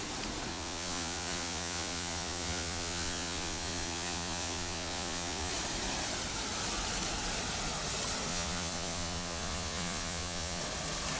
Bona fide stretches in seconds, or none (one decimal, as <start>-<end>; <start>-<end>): 0.0-0.5; 5.5-8.3; 10.6-11.2